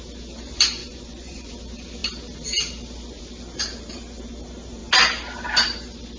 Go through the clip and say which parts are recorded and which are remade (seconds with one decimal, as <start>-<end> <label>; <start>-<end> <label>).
0.0-0.8 recorded; 0.8-1.5 remade; 1.5-6.2 recorded

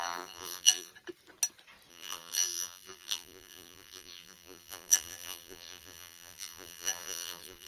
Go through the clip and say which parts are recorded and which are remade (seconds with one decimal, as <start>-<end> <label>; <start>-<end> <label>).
0.0-0.9 remade; 0.9-1.9 recorded; 1.9-7.7 remade

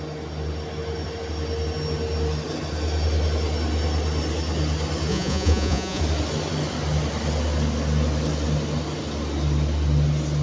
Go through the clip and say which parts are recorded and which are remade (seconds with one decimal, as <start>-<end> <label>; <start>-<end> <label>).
0.0-5.1 recorded; 5.1-6.0 remade; 6.0-10.4 recorded

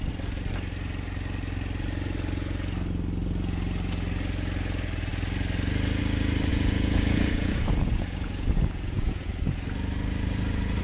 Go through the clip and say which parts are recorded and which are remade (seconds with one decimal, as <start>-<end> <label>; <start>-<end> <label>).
0.0-6.5 recorded; 6.5-9.3 remade; 9.3-10.8 recorded

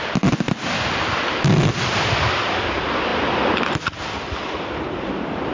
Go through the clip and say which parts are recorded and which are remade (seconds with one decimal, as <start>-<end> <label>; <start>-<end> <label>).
0.0-5.5 recorded

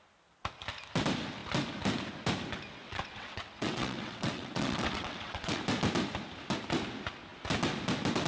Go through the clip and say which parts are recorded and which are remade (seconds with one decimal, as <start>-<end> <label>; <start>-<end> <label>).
0.0-2.8 recorded; 2.8-5.6 remade; 5.6-8.3 recorded